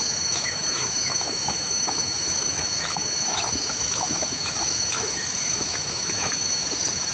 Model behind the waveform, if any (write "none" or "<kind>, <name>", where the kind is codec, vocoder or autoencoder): autoencoder, DAC-VAE